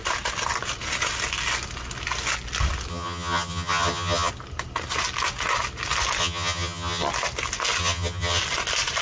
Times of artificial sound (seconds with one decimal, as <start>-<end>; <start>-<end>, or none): 2.9-4.3; 6.2-7.1; 7.8-8.4